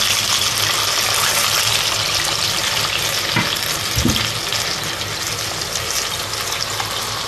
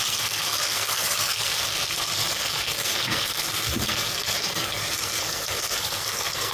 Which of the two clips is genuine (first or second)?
first